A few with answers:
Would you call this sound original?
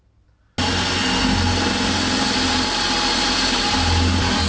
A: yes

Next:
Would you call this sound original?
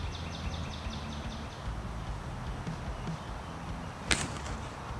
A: yes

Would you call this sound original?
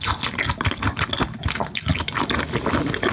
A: yes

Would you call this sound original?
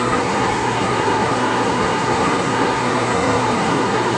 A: no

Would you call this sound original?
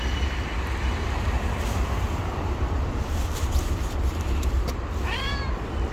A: no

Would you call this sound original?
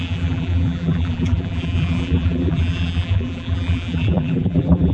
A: no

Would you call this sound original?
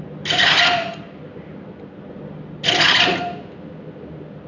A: yes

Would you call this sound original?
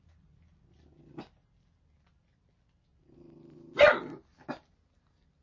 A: yes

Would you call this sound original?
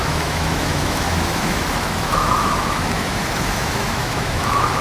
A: no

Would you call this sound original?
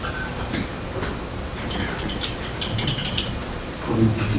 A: yes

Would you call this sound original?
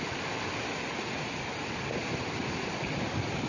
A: yes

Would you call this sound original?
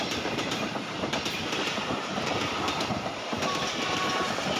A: no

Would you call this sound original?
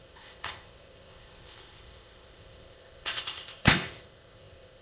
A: no